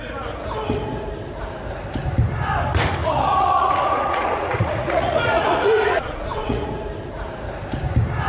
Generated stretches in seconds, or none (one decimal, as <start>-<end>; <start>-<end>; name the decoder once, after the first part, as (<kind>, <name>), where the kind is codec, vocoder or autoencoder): 3.0-6.7 (vocoder, Vocos)